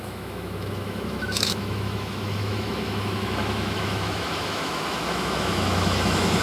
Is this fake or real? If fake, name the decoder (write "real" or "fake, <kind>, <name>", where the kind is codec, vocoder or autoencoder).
fake, autoencoder, DAC-VAE